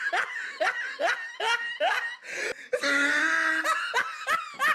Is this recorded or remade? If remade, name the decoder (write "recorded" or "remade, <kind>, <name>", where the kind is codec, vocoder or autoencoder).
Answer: recorded